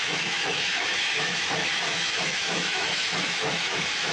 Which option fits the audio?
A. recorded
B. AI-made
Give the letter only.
B